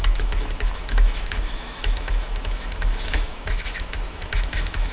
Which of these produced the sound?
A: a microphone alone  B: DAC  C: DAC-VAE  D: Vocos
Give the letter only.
C